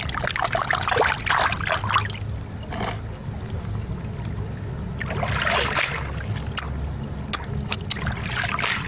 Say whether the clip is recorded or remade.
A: recorded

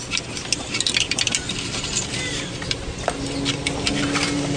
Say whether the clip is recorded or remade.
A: recorded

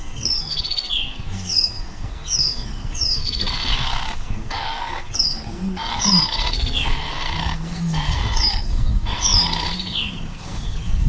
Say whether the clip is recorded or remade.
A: remade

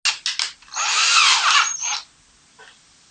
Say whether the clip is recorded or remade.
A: recorded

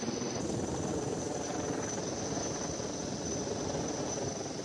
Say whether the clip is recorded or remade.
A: recorded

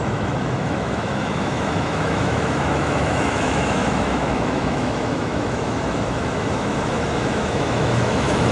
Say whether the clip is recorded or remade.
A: remade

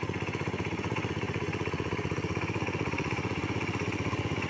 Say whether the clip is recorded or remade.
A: remade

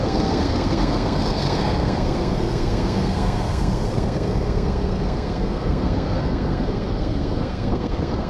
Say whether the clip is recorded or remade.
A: remade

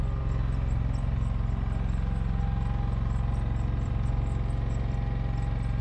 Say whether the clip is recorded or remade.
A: recorded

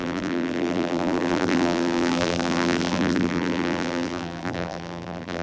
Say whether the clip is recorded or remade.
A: remade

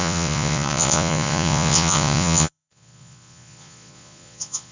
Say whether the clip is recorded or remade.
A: remade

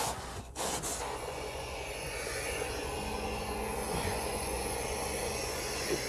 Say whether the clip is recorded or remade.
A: remade